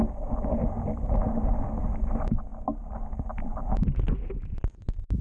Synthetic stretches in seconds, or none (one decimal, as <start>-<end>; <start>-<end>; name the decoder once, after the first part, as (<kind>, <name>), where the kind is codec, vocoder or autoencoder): none